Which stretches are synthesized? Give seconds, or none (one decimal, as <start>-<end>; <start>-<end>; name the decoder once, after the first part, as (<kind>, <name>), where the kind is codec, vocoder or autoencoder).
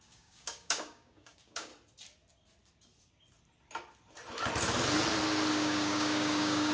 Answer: 0.0-1.7 (codec, DAC); 5.5-6.7